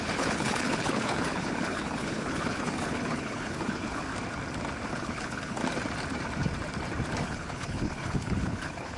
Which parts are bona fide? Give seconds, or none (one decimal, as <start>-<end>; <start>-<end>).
4.1-4.9; 5.6-7.2